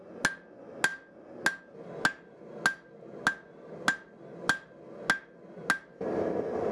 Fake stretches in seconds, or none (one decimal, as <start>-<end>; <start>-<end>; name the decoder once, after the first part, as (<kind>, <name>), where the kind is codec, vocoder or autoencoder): none